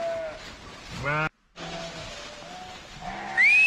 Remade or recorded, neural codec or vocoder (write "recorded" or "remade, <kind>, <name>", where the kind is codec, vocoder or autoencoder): recorded